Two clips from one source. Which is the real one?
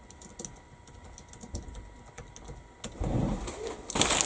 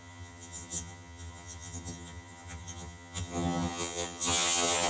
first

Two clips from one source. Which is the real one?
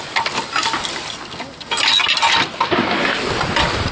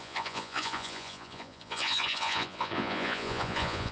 first